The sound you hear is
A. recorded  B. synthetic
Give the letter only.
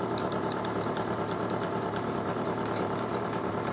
B